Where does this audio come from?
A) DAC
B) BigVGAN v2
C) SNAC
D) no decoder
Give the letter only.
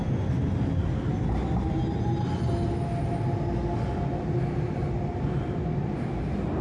D